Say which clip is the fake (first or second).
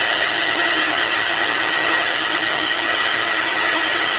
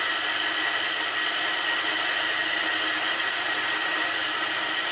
first